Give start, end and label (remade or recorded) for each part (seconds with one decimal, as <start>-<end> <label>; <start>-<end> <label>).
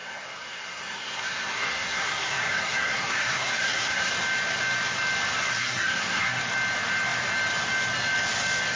0.0-4.1 remade; 4.1-5.4 recorded; 5.4-6.4 remade; 6.4-8.8 recorded